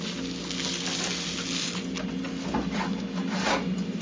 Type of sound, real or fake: real